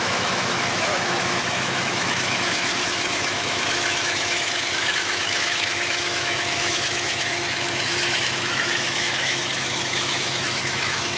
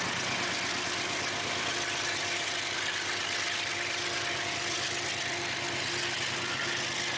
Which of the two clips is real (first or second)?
second